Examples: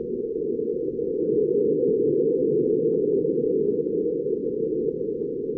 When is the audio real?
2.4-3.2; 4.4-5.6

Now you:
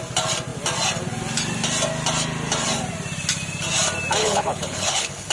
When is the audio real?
0.0-4.2

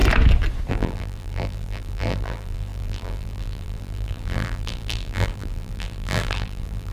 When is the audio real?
0.0-0.7